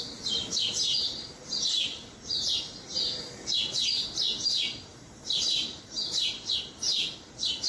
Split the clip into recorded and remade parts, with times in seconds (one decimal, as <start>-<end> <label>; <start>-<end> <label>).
0.0-4.9 recorded; 4.9-6.5 remade; 6.5-7.7 recorded